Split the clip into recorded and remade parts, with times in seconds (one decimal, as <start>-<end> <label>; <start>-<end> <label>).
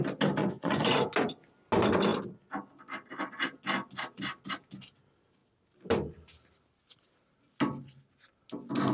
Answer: 0.0-0.4 recorded; 0.4-1.0 remade; 1.0-8.9 recorded